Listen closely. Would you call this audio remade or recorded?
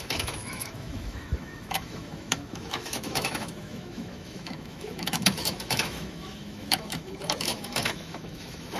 remade